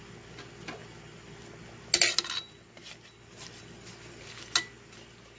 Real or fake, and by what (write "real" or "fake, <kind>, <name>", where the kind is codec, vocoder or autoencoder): real